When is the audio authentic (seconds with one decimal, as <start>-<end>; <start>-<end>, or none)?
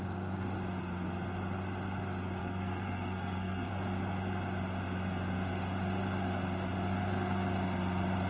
0.0-2.4; 3.7-8.3